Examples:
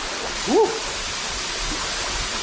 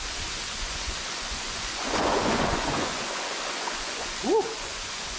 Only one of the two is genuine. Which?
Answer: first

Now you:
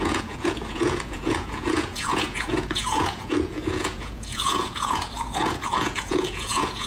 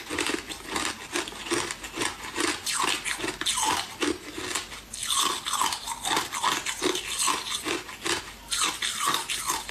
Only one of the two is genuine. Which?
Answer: second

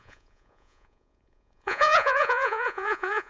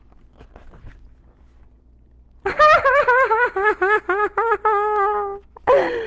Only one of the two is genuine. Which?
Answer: second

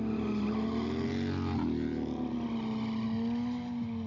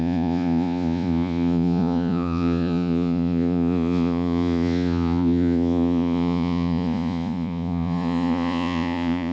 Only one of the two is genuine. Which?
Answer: first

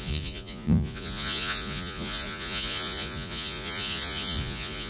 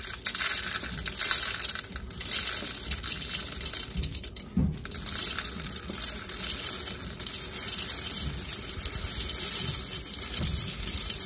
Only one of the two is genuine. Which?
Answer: second